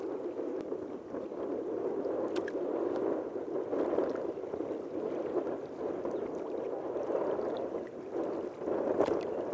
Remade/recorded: recorded